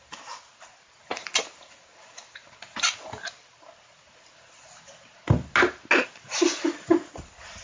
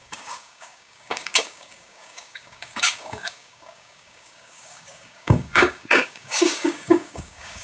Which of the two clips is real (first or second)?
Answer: first